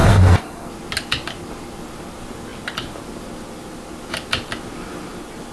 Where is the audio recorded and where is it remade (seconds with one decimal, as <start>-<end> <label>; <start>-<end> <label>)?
0.0-0.7 remade; 0.7-5.5 recorded